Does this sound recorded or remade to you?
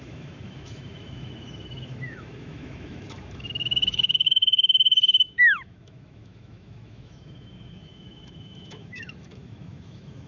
remade